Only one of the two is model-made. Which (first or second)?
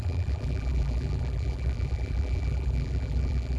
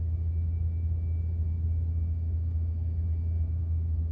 first